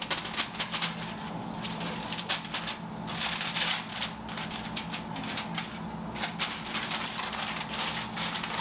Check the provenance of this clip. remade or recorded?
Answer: recorded